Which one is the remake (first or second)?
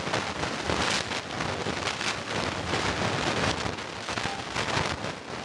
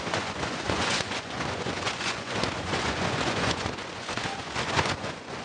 second